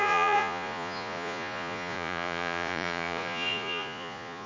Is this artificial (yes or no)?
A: yes